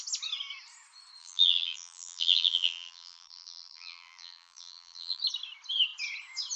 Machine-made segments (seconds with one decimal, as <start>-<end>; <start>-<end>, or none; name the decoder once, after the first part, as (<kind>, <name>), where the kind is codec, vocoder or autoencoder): 1.2-5.2 (vocoder, BigVGAN v2)